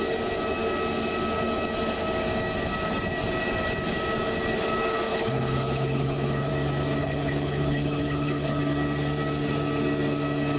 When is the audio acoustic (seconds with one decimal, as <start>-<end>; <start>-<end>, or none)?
0.0-5.1; 6.5-7.0; 8.6-10.6